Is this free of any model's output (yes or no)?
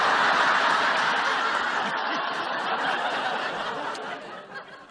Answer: yes